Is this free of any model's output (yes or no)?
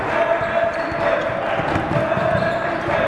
yes